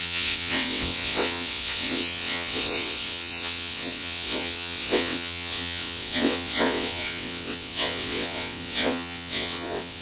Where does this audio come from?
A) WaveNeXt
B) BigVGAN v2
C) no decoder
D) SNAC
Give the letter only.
A